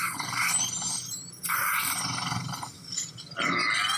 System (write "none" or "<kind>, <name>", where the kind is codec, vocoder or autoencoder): none